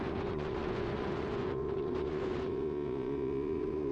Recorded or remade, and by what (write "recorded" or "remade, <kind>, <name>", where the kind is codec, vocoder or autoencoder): remade, vocoder, Vocos